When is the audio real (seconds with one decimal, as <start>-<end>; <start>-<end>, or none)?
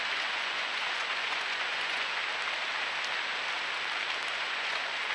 2.2-4.3